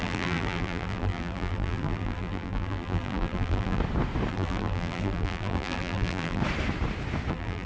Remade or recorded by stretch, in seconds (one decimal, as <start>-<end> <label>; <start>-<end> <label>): 0.0-3.8 remade; 3.8-4.3 recorded; 4.3-6.4 remade; 6.4-7.3 recorded; 7.3-7.7 remade